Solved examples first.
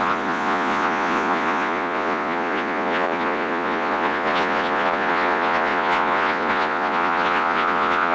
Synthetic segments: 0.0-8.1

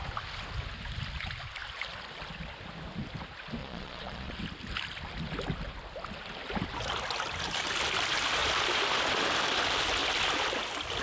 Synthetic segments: 3.6-4.3

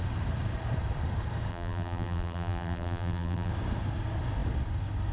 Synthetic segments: 1.5-3.5

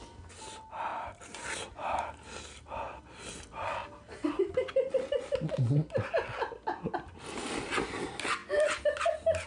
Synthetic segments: 0.9-2.3

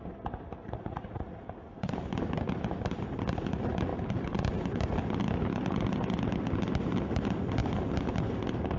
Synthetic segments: 0.6-1.9

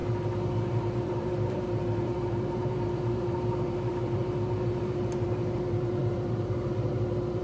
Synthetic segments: 0.6-7.4

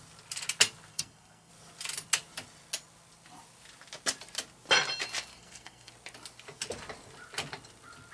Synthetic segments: 0.9-1.5; 5.3-5.9